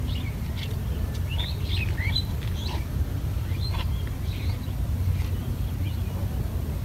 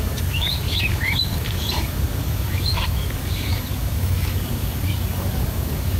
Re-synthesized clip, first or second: second